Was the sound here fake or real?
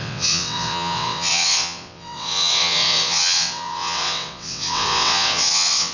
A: fake